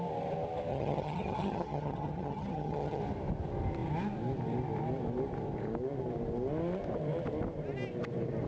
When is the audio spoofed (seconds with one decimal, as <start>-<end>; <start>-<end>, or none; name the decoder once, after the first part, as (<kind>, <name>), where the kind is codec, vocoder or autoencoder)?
0.7-3.0 (vocoder, HiFi-GAN)